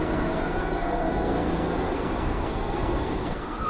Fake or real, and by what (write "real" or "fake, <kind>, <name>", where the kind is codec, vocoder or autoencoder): fake, codec, SNAC